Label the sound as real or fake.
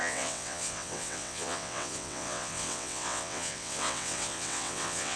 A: fake